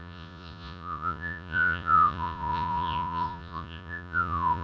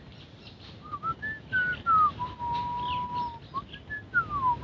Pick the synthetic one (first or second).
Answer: first